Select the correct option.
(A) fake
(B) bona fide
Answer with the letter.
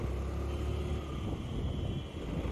B